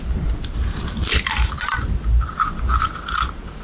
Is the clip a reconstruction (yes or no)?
no